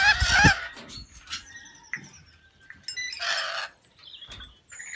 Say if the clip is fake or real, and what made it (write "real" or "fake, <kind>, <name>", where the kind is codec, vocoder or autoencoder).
real